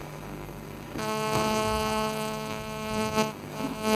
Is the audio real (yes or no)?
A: no